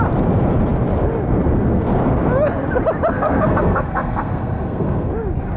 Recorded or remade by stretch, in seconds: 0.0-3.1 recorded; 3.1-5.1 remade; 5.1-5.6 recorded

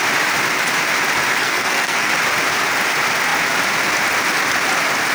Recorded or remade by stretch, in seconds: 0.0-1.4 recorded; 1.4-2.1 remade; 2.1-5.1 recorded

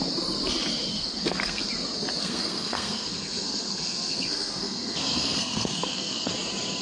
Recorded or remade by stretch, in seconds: 0.0-0.9 recorded; 0.9-1.7 remade; 1.7-2.2 recorded; 2.2-6.3 remade; 6.3-6.8 recorded